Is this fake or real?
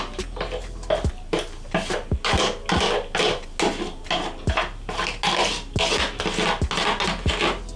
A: real